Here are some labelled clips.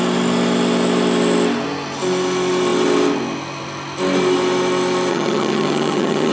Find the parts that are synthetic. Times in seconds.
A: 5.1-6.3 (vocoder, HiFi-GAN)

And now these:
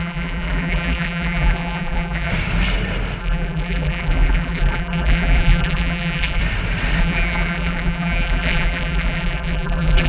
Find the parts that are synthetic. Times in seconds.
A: 0.0-2.3 (vocoder, BigVGAN v2); 3.2-6.4; 7.0-10.1

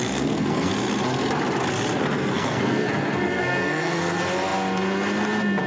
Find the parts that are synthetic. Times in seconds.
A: 0.0-0.7 (codec, SNAC); 2.0-4.0

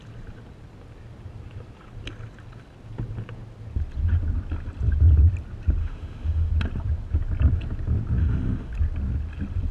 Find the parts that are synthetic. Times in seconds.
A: 5.8-6.5 (autoencoder, DAC-VAE); 8.2-8.7

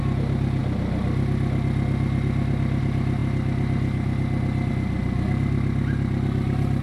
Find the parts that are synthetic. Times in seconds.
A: none

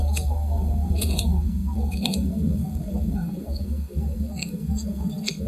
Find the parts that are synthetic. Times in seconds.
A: 0.0-5.5 (codec, SNAC)

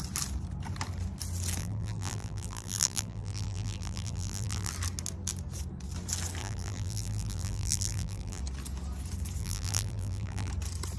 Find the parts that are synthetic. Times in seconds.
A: 1.6-4.7 (vocoder, BigVGAN v2); 6.4-8.4; 9.4-10.5

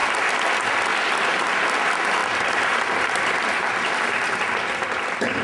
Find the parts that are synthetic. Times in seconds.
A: 0.0-0.5 (vocoder, BigVGAN v2); 2.2-5.4